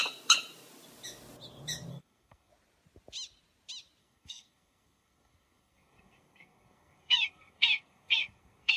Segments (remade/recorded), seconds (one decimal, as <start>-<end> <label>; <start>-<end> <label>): 0.0-1.9 recorded; 1.9-2.5 remade; 2.5-4.0 recorded; 4.0-8.8 remade